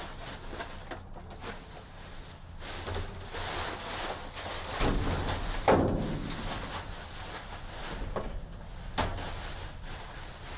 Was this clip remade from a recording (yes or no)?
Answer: no